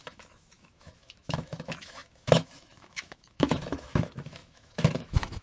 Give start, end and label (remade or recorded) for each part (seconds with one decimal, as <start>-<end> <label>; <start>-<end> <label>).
0.0-5.4 remade